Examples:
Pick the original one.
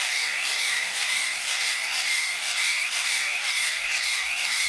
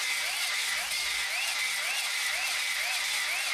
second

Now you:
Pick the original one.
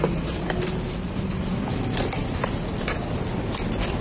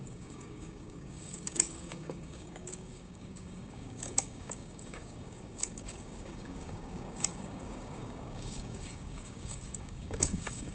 first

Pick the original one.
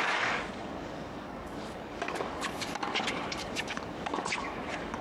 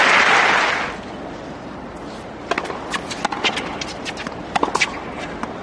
second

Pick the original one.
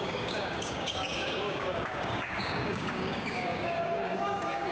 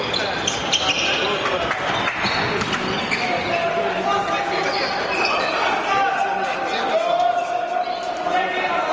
second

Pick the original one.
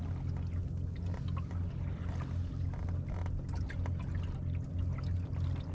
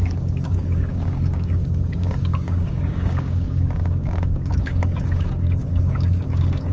first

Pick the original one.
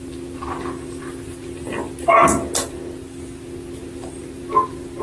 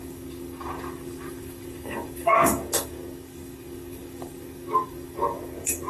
first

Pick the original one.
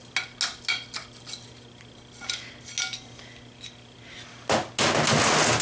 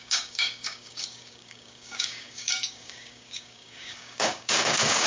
first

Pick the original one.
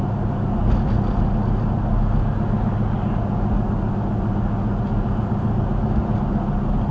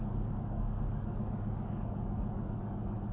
first